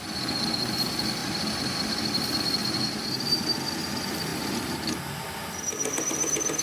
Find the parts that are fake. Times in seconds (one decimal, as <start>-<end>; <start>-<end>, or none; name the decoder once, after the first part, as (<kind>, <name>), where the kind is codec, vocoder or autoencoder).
1.2-2.0 (vocoder, BigVGAN v2); 4.3-5.6